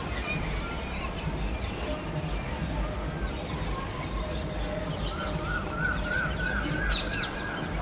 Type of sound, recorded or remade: recorded